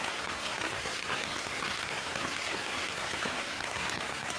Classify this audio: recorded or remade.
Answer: remade